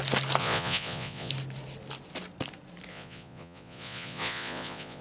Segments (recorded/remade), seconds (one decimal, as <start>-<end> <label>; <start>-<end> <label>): 0.0-0.4 recorded; 0.4-1.3 remade; 1.3-2.9 recorded; 2.9-5.0 remade